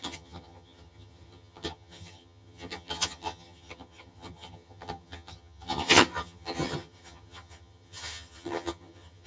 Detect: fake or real fake